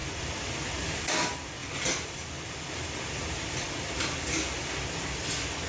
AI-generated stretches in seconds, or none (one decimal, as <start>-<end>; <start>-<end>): none